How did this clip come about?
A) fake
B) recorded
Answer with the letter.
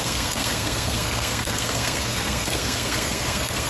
A